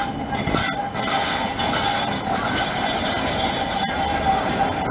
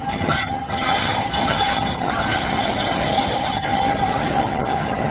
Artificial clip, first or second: second